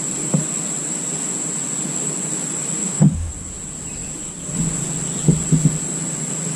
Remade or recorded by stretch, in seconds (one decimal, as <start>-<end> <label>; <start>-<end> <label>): 0.0-2.8 recorded; 2.8-3.3 remade; 3.3-6.6 recorded